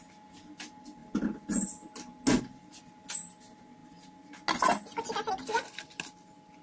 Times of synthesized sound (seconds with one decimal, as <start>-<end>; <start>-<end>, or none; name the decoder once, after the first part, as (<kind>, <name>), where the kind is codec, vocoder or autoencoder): none